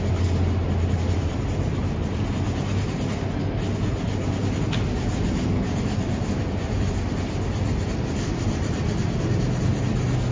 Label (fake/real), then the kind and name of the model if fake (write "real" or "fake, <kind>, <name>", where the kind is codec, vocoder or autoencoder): real